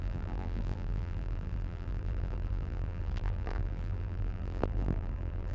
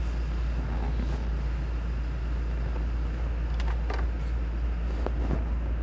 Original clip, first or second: second